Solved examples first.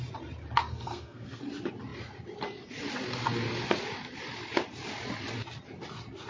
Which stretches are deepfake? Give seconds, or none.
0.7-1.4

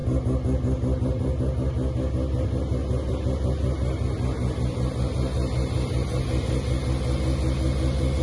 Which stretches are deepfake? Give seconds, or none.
none

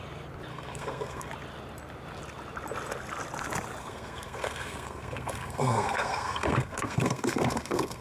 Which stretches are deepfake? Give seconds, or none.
0.5-1.3; 3.8-8.0